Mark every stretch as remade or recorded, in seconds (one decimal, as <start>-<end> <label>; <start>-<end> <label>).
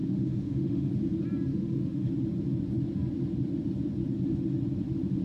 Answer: 0.0-0.9 remade; 0.9-1.5 recorded; 1.5-2.1 remade; 2.1-5.2 recorded